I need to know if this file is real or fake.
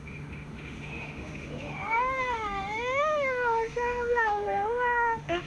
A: fake